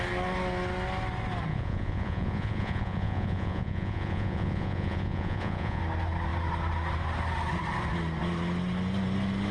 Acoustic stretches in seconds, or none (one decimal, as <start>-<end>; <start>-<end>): 0.0-1.5; 5.8-9.5